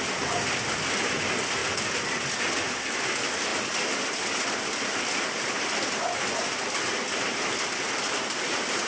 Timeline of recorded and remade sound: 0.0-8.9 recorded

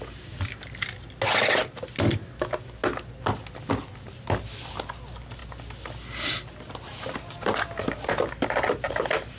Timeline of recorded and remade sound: 0.0-9.4 recorded

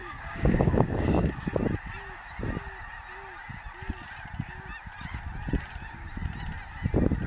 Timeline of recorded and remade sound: 0.0-1.5 remade; 1.5-7.3 recorded

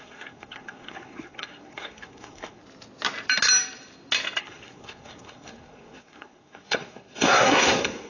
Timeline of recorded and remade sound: 0.0-2.6 remade; 2.6-4.4 recorded; 4.4-8.1 remade

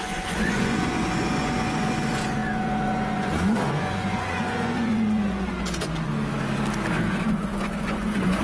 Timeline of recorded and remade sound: 0.0-6.1 remade; 6.1-7.3 recorded; 7.3-8.4 remade

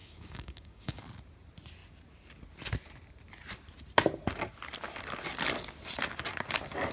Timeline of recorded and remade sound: 0.0-1.0 remade; 1.0-6.9 recorded

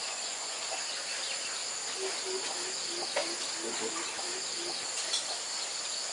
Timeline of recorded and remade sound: 0.0-0.6 remade; 0.6-6.1 recorded